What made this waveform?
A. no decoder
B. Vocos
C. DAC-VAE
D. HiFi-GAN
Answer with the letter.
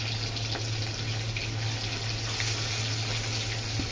A